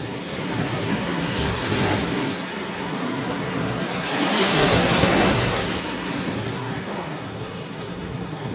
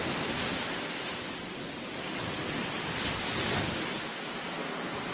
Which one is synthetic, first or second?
first